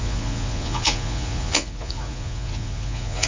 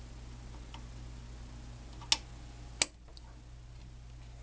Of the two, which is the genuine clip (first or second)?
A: second